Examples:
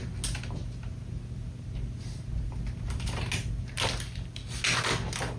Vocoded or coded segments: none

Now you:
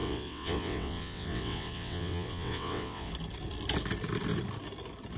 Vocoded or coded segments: 0.0-3.1

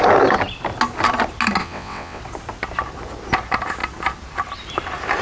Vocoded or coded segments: 1.6-2.2

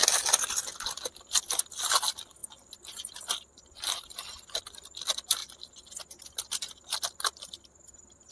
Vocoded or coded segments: none